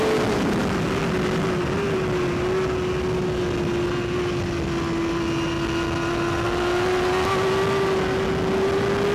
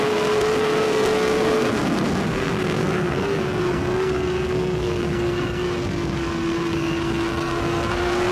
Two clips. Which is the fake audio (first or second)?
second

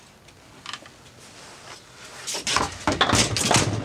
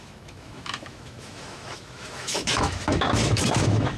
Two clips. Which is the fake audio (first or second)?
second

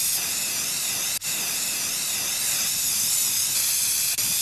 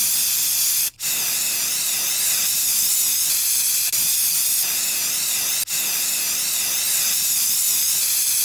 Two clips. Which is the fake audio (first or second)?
first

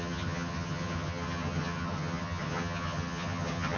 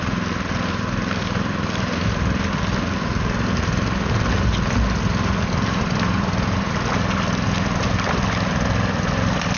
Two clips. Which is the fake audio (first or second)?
first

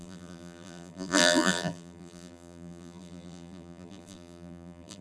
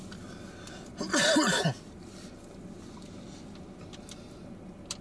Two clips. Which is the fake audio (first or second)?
first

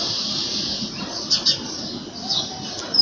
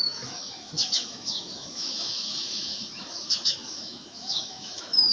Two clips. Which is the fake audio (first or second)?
second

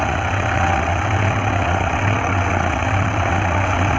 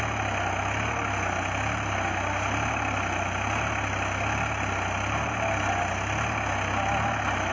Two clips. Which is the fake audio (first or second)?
first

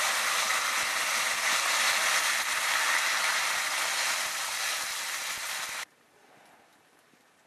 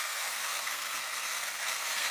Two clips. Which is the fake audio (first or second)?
second